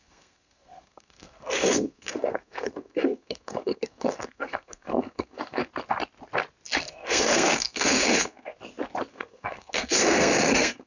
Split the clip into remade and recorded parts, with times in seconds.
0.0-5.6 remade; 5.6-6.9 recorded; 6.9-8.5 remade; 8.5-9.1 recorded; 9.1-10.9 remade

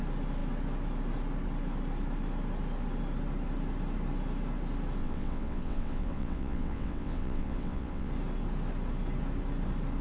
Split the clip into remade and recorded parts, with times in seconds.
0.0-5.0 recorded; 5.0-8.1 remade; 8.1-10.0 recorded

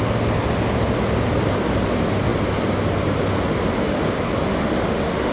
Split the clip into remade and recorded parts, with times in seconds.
0.0-4.5 recorded; 4.5-5.3 remade

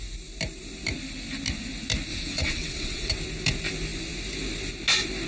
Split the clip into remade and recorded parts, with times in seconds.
0.0-2.1 recorded; 2.1-3.1 remade; 3.1-5.3 recorded

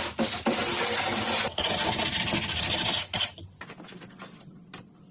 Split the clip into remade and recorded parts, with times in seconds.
0.0-5.1 recorded

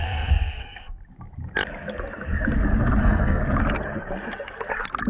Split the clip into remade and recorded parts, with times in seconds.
0.0-1.0 remade; 1.0-3.0 recorded; 3.0-3.4 remade; 3.4-5.1 recorded

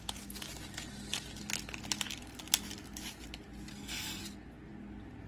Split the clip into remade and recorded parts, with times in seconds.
0.0-3.7 recorded; 3.7-4.2 remade; 4.2-5.3 recorded